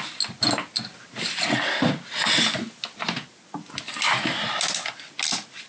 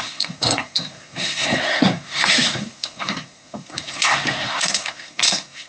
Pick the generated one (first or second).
second